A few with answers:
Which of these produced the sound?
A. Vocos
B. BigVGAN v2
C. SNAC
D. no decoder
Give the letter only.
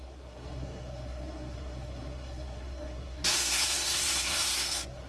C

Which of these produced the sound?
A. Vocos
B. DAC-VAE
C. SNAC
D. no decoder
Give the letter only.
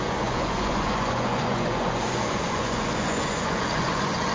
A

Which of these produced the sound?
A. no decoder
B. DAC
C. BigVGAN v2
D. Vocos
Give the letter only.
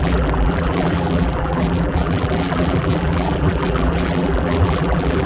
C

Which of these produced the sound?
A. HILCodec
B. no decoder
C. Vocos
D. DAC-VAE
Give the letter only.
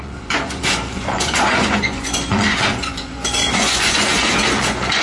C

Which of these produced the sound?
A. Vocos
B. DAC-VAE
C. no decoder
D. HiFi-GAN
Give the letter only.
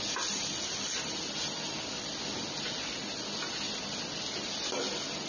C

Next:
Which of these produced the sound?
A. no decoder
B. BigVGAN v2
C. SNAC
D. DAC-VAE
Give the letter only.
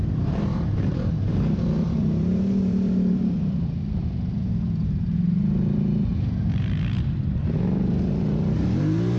B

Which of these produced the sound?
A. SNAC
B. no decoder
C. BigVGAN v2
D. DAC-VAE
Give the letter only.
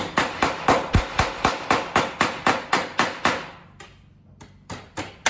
B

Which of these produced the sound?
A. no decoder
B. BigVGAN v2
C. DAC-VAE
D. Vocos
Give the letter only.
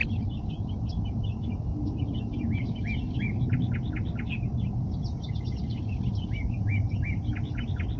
A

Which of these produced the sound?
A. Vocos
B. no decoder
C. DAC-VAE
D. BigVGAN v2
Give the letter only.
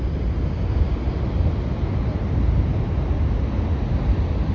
B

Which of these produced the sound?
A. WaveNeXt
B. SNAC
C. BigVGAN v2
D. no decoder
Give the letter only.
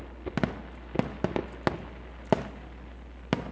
D